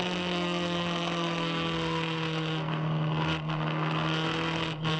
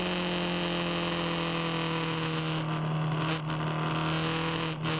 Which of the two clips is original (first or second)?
second